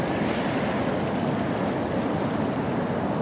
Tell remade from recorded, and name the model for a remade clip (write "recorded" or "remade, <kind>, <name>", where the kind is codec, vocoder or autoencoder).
recorded